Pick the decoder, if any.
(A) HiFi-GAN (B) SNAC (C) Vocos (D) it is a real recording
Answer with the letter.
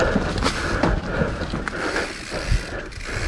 D